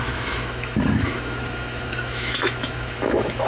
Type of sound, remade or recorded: remade